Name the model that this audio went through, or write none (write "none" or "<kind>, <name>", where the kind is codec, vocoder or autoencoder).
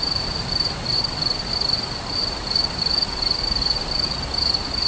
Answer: none